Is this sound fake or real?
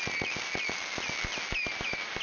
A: real